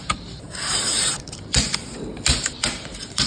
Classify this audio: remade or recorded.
remade